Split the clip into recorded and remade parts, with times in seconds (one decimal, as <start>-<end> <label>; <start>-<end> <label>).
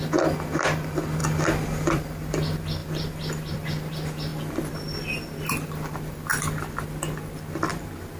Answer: 0.0-1.2 remade; 1.2-1.9 recorded; 1.9-2.8 remade; 2.8-3.5 recorded; 3.5-4.3 remade; 4.3-5.5 recorded; 5.5-8.2 remade